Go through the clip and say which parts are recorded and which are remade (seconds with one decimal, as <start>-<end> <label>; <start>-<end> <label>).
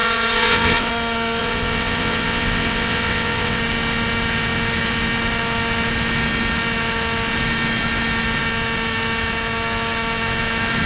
0.0-0.9 remade; 0.9-1.4 recorded; 1.4-3.6 remade; 3.6-10.9 recorded